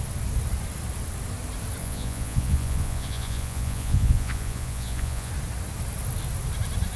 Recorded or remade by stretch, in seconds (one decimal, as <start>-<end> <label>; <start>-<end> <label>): 0.0-1.8 recorded; 1.8-5.3 remade; 5.3-7.0 recorded